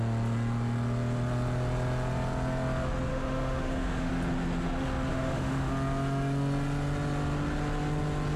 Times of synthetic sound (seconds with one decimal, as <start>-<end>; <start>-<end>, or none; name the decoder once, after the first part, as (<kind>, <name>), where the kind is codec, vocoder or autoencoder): 3.1-4.1 (autoencoder, DAC-VAE); 5.1-5.7